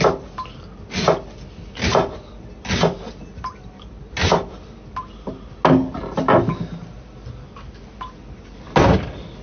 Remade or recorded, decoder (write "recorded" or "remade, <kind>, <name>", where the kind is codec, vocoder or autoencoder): recorded